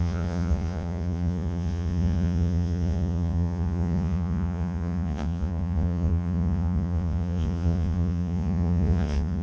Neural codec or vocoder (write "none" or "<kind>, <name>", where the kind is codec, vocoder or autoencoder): vocoder, Vocos